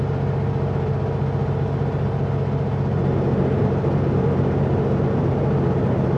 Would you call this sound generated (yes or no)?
no